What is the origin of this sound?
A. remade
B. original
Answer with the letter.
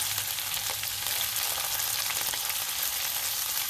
B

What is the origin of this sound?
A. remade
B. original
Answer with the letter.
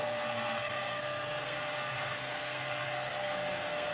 A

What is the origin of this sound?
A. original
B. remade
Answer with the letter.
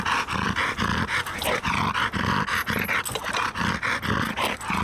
A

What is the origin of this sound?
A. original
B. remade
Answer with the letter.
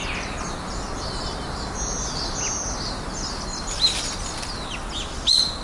A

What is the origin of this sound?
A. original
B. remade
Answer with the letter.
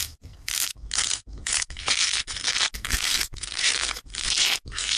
B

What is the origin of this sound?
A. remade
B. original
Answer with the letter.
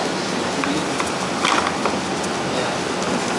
B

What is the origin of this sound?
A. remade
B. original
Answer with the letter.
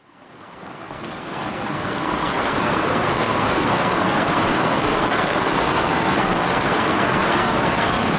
A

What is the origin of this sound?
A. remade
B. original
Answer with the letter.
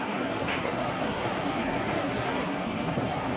A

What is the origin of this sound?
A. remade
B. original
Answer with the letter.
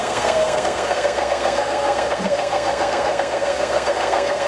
A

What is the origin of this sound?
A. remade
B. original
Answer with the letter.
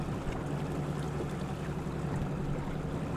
B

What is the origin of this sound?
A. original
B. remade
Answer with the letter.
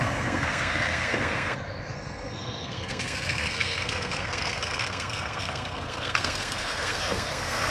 B